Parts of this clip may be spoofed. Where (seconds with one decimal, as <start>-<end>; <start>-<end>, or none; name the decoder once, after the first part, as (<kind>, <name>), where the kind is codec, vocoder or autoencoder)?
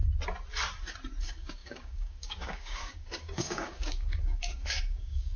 1.2-5.4 (codec, DAC)